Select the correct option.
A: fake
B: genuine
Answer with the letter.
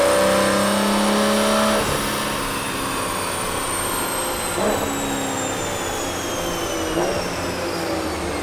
B